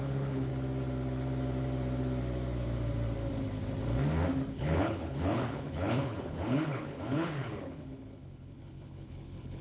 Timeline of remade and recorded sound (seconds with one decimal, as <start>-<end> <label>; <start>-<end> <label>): 0.0-0.5 remade; 0.5-4.5 recorded; 4.5-9.6 remade

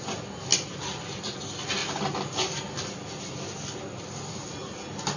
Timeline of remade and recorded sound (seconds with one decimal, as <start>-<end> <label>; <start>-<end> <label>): 0.0-5.2 recorded

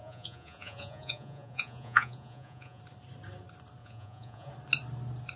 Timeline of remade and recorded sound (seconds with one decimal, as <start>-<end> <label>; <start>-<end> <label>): 0.0-2.8 remade; 2.8-3.8 recorded; 3.8-4.5 remade; 4.5-5.4 recorded

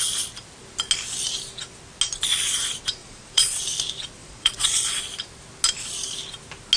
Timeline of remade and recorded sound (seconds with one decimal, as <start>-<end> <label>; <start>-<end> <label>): 0.0-3.0 recorded; 3.0-3.6 remade; 3.6-4.2 recorded; 4.2-5.0 remade; 5.0-6.8 recorded

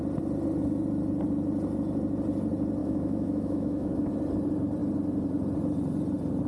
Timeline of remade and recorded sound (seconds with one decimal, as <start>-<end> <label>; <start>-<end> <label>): 0.0-2.8 recorded; 2.8-4.1 remade; 4.1-6.5 recorded

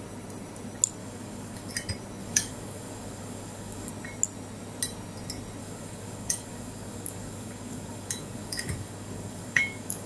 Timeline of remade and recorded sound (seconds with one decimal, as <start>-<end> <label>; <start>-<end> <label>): 0.0-1.0 recorded; 1.0-1.7 remade; 1.7-2.2 recorded; 2.2-3.9 remade; 3.9-5.6 recorded; 5.6-10.1 remade

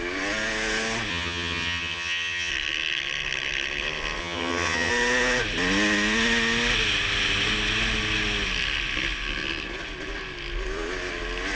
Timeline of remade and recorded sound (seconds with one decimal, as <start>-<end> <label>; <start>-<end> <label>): 0.0-1.1 recorded; 1.1-2.5 remade; 2.5-4.2 recorded; 4.2-4.9 remade; 4.9-11.5 recorded